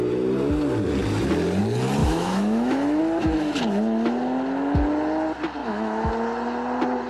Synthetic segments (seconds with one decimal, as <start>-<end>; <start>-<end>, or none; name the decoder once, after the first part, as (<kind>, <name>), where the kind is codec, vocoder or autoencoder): 2.0-3.0 (autoencoder, DAC-VAE); 5.6-6.1